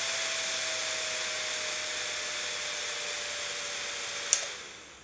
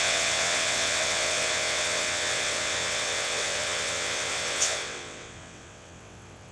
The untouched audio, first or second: first